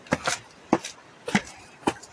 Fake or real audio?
real